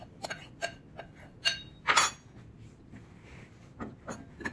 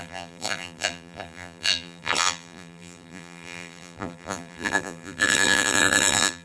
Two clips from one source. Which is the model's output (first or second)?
second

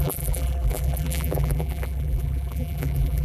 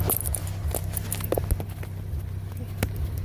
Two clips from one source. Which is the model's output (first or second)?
first